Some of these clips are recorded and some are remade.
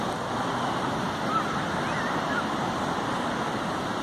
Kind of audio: recorded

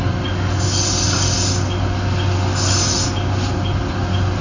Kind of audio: recorded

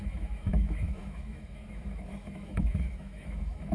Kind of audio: remade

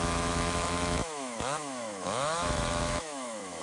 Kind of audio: remade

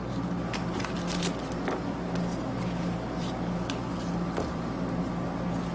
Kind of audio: recorded